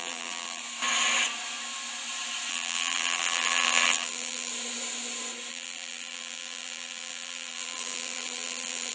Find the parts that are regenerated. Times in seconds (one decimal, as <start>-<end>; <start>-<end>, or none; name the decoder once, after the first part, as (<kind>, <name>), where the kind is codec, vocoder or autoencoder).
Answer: 0.0-0.6 (vocoder, BigVGAN v2); 2.5-4.5; 5.5-8.9